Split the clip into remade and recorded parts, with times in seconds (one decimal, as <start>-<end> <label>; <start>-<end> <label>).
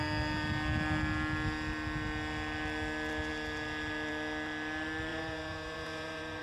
0.0-5.1 recorded; 5.1-6.4 remade